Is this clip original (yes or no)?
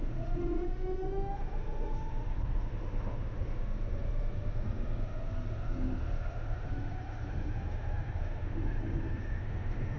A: no